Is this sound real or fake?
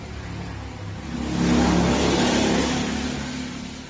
real